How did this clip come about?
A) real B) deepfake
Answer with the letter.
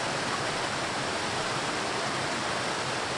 A